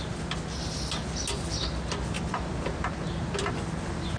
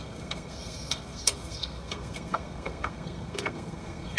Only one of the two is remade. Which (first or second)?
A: second